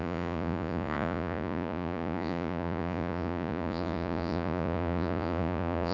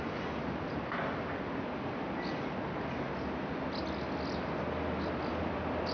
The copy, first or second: first